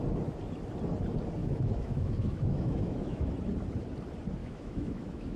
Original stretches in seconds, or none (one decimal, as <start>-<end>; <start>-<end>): 0.0-1.4; 3.3-4.4